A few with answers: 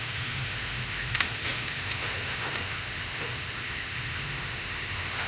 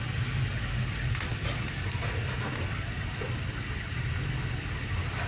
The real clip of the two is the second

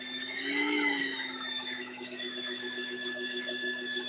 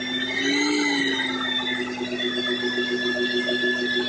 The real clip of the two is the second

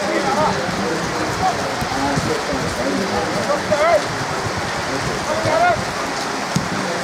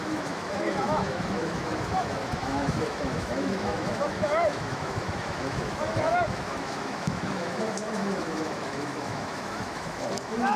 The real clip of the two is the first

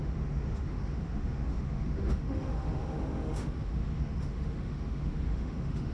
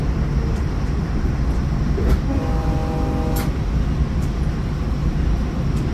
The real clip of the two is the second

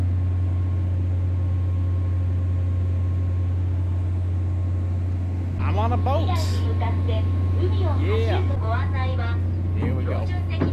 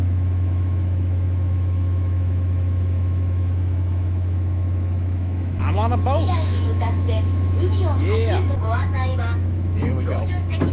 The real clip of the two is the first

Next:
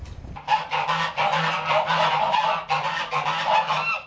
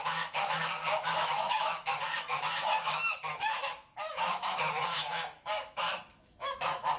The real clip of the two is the first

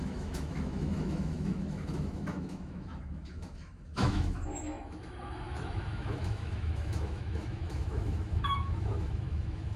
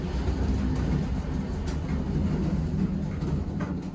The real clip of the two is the second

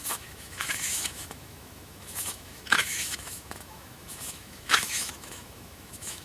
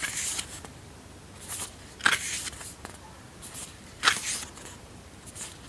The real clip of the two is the second